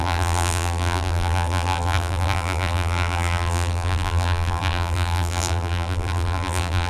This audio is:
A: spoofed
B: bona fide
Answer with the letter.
A